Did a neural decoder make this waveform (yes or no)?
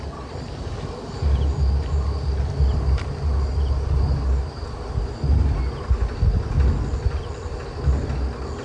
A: no